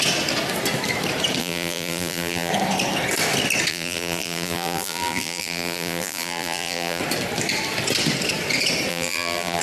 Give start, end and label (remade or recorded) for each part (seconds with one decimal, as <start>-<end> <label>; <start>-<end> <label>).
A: 0.0-1.4 recorded; 1.4-2.5 remade; 2.5-3.7 recorded; 3.7-7.0 remade; 7.0-8.9 recorded; 8.9-9.6 remade